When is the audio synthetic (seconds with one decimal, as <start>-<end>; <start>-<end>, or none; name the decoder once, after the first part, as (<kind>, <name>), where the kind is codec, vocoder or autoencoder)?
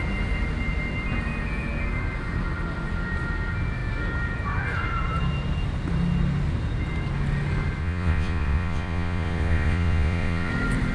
7.8-10.5 (vocoder, Vocos)